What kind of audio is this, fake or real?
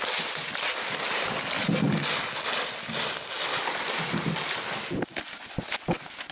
real